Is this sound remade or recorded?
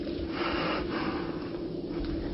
recorded